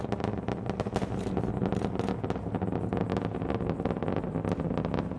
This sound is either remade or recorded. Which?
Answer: recorded